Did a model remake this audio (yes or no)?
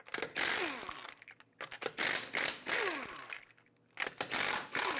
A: no